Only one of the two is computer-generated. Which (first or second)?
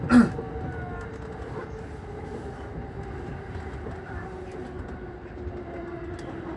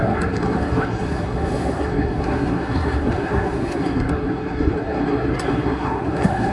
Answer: second